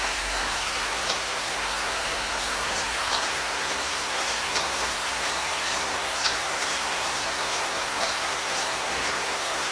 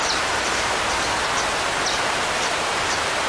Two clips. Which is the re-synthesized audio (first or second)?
first